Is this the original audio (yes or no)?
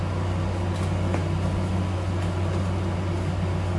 yes